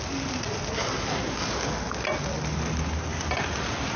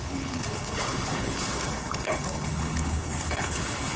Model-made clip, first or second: second